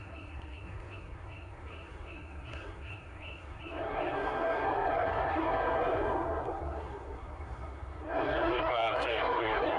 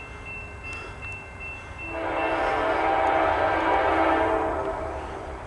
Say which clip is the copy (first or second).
first